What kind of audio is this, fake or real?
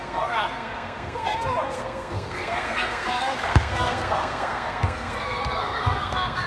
fake